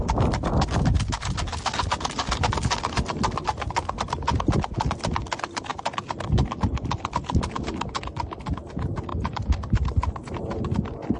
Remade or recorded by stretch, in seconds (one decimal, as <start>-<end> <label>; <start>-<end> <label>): 0.0-11.2 recorded